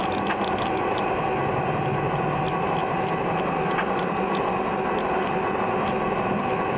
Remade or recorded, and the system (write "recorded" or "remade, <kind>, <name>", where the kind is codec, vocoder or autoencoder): recorded